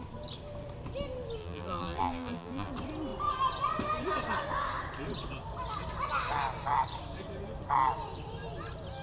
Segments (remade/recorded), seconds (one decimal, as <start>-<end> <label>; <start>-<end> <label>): 0.0-1.4 recorded; 1.4-2.7 remade; 2.7-9.0 recorded